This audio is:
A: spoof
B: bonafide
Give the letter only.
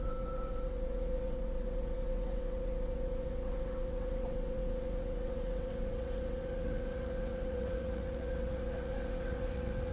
A